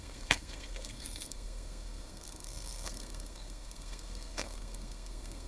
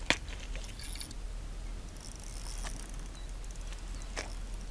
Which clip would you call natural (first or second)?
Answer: second